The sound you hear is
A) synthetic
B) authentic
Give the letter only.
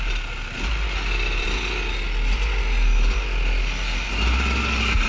B